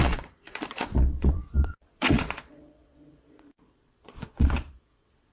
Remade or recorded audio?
remade